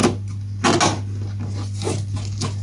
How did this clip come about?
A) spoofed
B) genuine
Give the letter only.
B